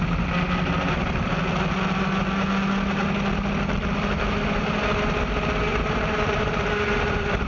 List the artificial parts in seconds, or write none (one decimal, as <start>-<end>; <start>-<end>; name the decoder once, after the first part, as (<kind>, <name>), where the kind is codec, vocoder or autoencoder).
5.7-7.5 (vocoder, BigVGAN v2)